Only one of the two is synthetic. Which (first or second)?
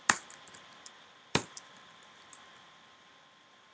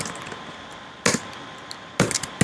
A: first